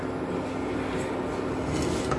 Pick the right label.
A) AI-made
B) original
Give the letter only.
B